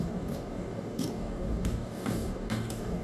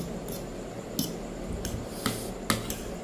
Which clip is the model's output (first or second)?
first